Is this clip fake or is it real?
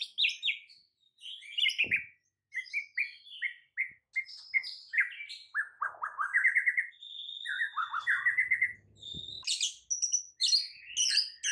real